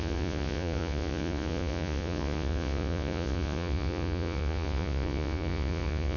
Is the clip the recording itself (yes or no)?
no